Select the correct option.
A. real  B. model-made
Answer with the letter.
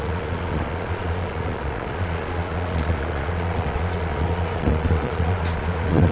B